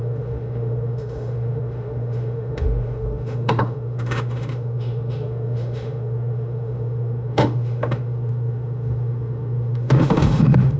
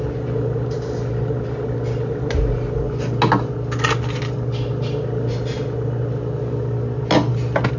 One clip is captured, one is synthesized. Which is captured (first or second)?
second